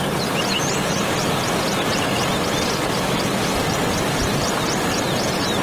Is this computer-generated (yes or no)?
no